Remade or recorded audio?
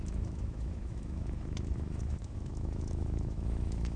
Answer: remade